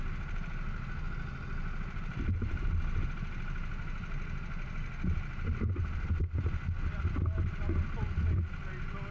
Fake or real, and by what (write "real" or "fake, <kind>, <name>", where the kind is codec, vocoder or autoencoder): real